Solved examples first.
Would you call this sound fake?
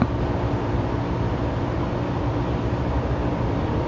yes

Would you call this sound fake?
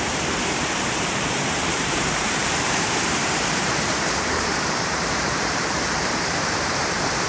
yes